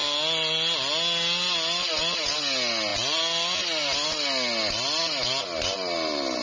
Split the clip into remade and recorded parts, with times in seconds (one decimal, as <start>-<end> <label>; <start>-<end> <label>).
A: 0.0-6.4 recorded